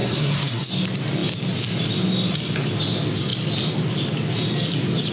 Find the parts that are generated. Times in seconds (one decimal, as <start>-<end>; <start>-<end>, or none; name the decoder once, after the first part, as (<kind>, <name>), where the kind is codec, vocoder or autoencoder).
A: 0.0-0.7 (codec, SNAC)